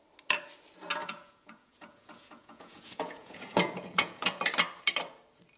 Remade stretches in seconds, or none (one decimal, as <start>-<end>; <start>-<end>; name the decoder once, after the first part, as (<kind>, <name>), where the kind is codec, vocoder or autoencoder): 1.0-4.4 (vocoder, Vocos)